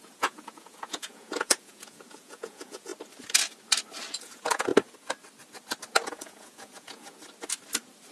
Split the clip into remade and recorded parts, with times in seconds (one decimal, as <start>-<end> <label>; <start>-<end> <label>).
0.0-2.9 remade; 2.9-4.2 recorded; 4.2-4.7 remade; 4.7-6.1 recorded; 6.1-7.2 remade; 7.2-8.1 recorded